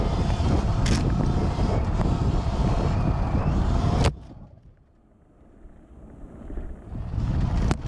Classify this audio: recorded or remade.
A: recorded